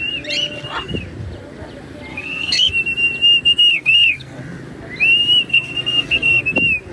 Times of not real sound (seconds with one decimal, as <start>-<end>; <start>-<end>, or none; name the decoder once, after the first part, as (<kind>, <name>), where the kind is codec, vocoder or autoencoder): 2.1-2.7 (codec, SNAC); 3.7-4.4; 5.5-6.4